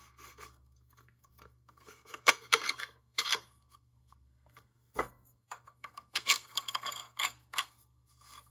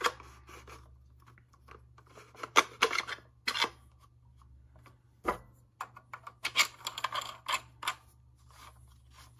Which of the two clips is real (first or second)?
second